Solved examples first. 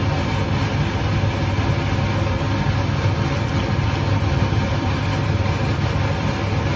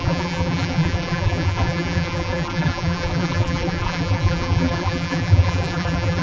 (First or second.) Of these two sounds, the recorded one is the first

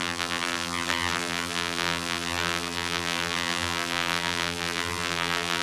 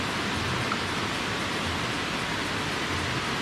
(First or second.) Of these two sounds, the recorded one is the second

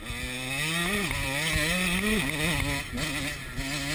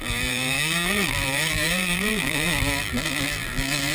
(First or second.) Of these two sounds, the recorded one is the first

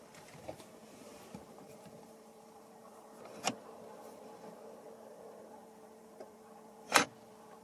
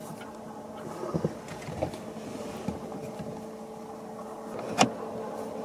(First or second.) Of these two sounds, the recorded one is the second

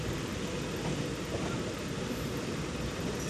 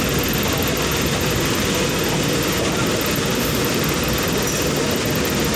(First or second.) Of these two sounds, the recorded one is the second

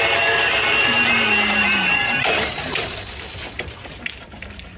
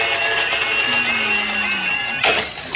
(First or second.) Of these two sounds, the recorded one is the second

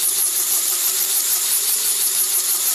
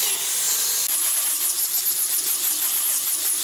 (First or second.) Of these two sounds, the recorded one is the second